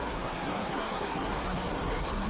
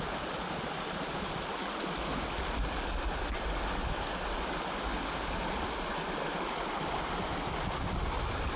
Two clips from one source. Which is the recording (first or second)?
second